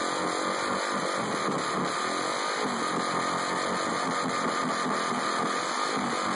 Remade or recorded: recorded